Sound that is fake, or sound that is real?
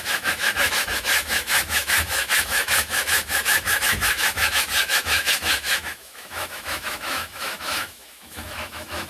fake